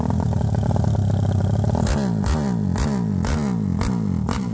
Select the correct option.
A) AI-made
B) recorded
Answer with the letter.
B